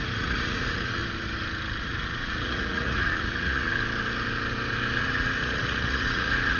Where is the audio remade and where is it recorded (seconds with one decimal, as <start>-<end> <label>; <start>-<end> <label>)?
0.0-1.0 remade; 1.0-1.8 recorded; 1.8-3.7 remade; 3.7-5.0 recorded; 5.0-6.6 remade